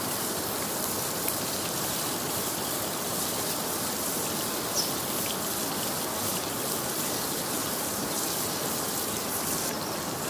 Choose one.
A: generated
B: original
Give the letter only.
A